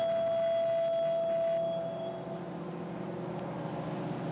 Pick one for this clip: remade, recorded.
recorded